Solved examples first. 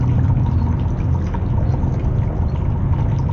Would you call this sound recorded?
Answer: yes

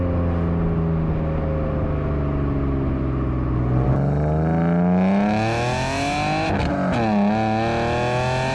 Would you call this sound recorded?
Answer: yes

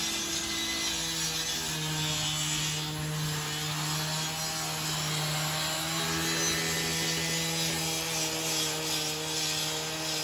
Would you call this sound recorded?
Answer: yes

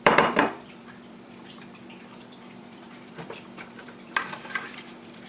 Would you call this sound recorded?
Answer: no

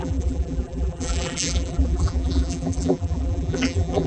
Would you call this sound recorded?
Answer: no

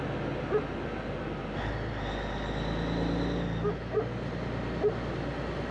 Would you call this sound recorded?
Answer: yes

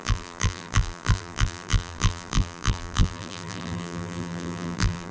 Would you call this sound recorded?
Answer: no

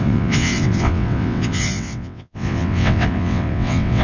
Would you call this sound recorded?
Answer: no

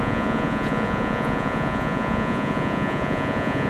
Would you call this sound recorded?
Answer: no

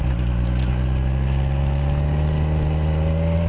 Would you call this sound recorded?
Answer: yes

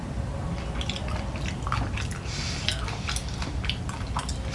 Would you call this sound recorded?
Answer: yes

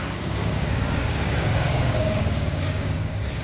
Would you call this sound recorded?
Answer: no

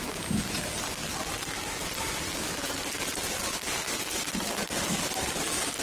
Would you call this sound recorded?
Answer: yes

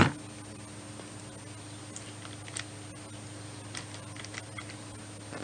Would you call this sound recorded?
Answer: yes